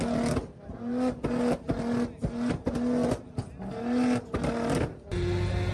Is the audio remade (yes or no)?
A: no